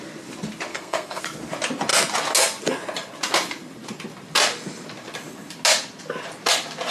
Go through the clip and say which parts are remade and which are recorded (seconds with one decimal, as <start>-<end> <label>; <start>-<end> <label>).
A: 0.0-0.7 recorded; 0.7-1.2 remade; 1.2-6.9 recorded